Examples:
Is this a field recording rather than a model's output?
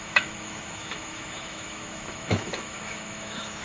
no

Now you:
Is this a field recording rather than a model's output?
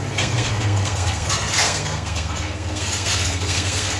no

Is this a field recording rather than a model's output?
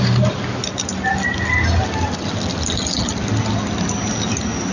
yes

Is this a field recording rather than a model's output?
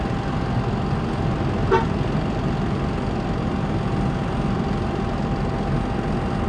yes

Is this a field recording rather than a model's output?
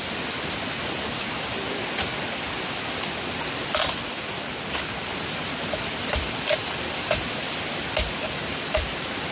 yes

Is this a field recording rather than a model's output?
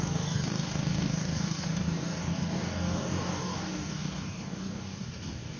no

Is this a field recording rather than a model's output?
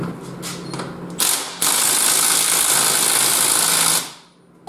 yes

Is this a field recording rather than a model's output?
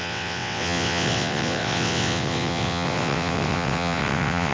no